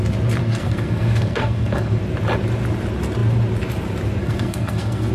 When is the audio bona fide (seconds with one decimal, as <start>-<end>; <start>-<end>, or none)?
0.0-0.4; 2.0-4.2